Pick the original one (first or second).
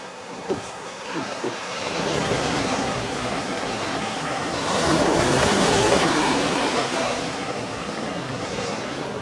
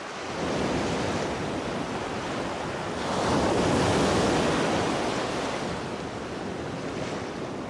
second